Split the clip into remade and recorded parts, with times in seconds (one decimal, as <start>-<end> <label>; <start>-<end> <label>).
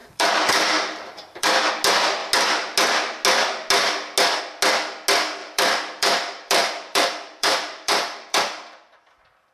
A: 0.0-1.7 remade; 1.7-5.4 recorded; 5.4-9.1 remade; 9.1-9.5 recorded